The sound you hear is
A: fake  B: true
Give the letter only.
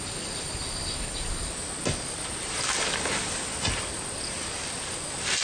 B